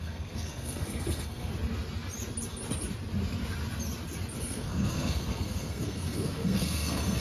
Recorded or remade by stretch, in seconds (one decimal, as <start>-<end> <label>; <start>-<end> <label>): 0.0-1.5 remade; 1.5-4.4 recorded; 4.4-7.2 remade